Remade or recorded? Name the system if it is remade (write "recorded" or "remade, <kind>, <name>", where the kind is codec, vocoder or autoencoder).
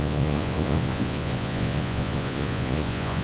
remade, vocoder, Vocos